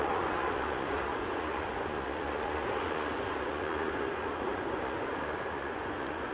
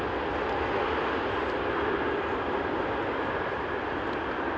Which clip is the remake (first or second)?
first